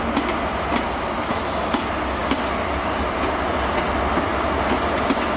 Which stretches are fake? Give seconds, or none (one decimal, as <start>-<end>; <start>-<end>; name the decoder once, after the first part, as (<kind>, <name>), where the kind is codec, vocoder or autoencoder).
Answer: none